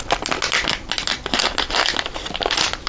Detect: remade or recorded recorded